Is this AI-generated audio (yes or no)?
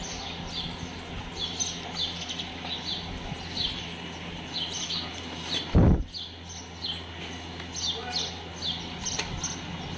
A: no